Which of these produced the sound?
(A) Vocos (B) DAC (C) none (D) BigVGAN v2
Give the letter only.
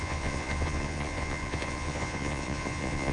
A